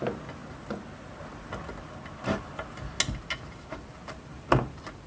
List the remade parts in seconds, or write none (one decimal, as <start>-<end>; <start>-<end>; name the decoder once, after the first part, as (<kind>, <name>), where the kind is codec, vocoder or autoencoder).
none